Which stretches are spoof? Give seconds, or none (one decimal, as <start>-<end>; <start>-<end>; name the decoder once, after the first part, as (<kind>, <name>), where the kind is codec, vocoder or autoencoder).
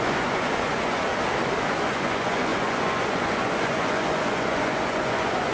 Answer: 0.0-1.1 (vocoder, Vocos); 1.7-5.5